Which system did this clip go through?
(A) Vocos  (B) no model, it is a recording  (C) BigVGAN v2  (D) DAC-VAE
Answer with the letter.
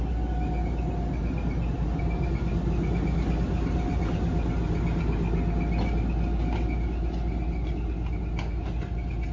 B